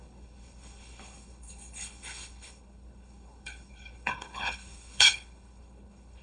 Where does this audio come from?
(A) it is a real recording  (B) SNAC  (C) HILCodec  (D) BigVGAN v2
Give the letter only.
C